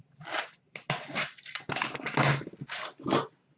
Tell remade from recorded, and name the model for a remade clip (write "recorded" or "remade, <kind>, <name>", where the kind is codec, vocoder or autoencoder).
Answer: recorded